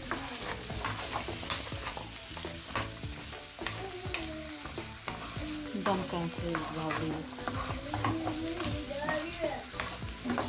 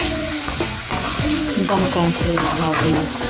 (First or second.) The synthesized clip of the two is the second